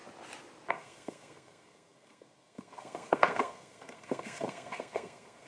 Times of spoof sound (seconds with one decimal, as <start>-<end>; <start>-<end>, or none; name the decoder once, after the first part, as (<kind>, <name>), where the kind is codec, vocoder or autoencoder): 0.7-5.5 (codec, SNAC)